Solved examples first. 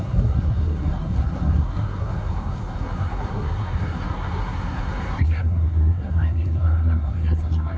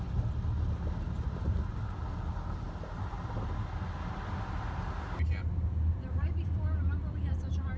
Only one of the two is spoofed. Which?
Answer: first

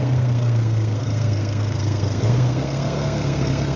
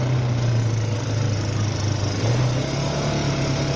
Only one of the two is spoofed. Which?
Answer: first